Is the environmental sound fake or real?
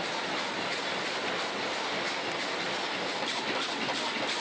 real